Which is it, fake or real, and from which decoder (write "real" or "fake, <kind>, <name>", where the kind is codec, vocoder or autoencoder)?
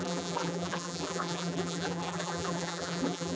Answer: fake, vocoder, BigVGAN v2